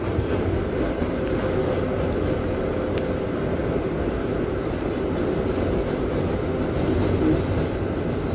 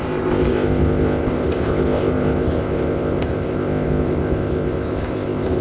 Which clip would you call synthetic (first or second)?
second